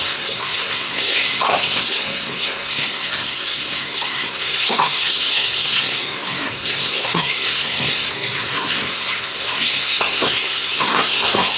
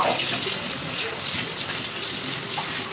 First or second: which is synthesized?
first